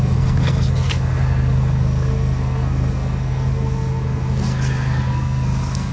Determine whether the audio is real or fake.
fake